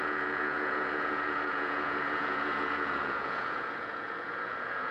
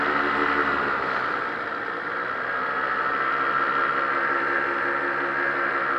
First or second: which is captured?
second